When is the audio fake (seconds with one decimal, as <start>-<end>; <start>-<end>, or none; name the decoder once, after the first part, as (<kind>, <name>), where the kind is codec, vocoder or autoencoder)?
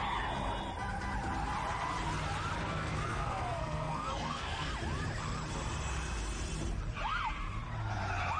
2.6-4.7 (codec, SNAC)